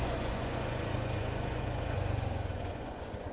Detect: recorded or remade remade